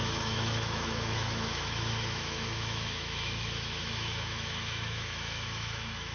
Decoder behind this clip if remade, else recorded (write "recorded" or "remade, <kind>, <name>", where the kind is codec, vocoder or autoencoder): remade, autoencoder, DAC-VAE